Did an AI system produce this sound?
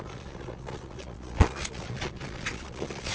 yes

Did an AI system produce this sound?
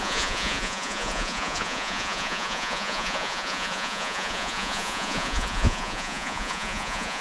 yes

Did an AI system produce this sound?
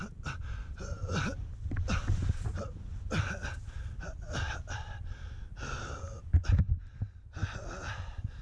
no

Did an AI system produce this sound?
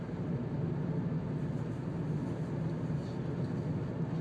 no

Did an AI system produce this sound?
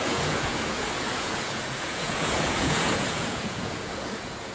yes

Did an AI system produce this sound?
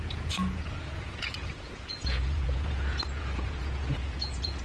yes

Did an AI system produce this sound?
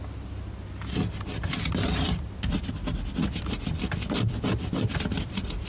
no